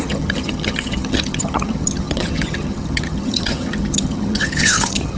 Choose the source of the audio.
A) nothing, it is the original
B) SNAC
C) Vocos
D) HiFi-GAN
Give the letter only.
D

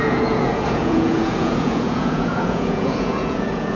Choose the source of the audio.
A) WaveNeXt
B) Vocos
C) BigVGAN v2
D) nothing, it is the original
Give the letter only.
B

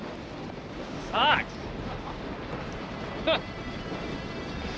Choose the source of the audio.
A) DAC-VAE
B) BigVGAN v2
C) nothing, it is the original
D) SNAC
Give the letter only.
C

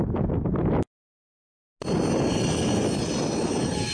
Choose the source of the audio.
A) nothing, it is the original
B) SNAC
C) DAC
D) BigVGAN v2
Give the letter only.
A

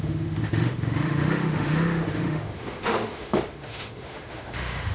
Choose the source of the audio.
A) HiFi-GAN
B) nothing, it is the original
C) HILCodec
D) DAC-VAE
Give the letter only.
D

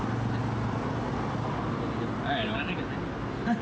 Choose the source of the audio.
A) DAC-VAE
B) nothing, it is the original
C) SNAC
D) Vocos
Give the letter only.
B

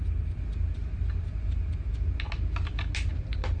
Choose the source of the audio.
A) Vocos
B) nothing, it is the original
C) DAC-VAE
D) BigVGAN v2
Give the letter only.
B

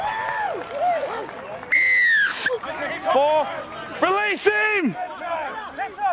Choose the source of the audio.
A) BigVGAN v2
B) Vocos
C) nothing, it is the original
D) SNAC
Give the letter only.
C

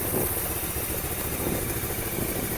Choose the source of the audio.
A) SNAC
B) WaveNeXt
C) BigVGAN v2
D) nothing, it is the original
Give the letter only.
D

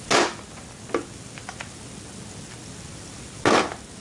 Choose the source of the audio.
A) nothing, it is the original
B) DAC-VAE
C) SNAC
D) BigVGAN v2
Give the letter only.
A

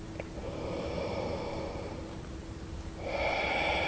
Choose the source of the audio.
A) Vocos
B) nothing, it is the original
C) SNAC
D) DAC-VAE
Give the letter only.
B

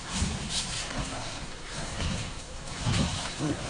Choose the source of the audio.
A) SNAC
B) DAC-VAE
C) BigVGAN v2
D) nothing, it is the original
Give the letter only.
A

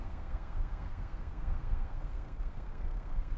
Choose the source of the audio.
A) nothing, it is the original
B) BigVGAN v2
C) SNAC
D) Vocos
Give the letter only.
C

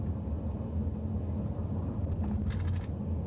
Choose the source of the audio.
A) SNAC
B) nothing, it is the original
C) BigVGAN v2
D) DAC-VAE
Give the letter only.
B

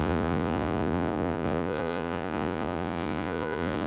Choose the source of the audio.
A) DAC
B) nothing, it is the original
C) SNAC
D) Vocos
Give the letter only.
D